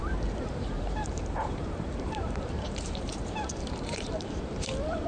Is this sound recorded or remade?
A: remade